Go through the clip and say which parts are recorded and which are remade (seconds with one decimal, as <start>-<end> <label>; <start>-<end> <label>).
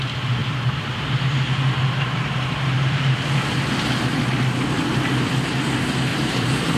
0.0-0.4 recorded; 0.4-3.6 remade; 3.6-6.1 recorded; 6.1-6.8 remade